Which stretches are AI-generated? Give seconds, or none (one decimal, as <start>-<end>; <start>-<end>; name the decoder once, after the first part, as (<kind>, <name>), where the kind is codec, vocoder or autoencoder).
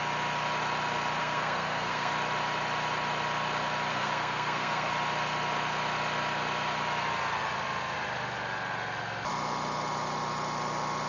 1.2-2.1 (codec, SNAC); 3.9-4.9